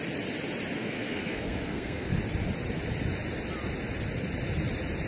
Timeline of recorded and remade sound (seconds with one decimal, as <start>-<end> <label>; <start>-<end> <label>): 0.0-0.8 recorded; 0.8-2.1 remade; 2.1-5.1 recorded